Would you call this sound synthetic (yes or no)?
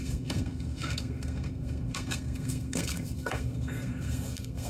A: yes